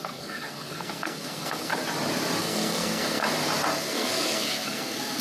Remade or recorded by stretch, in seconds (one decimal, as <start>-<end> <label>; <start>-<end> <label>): 0.0-1.7 remade; 1.7-2.4 recorded; 2.4-3.2 remade; 3.2-3.8 recorded; 3.8-5.2 remade